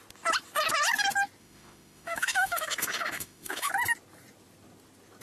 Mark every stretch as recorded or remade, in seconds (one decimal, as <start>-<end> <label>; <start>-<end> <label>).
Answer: 0.0-1.4 recorded; 1.4-3.7 remade; 3.7-5.2 recorded

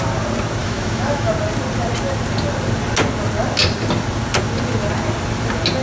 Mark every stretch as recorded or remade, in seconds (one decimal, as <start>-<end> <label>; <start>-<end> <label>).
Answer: 0.0-0.6 recorded; 0.6-1.3 remade; 1.3-5.8 recorded

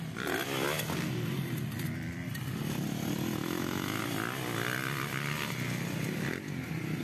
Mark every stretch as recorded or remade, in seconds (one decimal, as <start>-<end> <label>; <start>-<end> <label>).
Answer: 0.0-3.4 recorded; 3.4-4.0 remade; 4.0-7.0 recorded

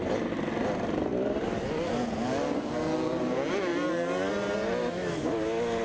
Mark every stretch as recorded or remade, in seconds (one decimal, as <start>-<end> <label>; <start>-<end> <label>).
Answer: 0.0-4.8 recorded; 4.8-5.8 remade

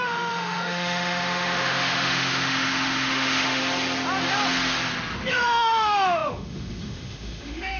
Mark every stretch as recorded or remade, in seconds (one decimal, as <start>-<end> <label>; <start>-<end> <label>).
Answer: 0.0-3.6 remade; 3.6-5.3 recorded; 5.3-7.8 remade